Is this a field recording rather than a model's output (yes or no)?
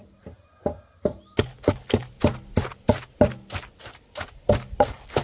yes